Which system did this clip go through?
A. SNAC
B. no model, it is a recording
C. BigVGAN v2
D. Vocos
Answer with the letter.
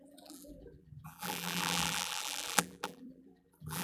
C